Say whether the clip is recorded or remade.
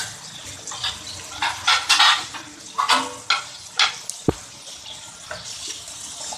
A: recorded